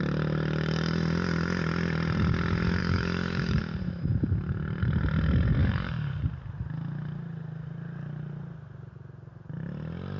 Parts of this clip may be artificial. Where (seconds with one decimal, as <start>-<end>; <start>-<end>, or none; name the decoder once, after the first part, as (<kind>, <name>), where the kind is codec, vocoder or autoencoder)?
2.8-3.6 (codec, DAC); 5.6-6.2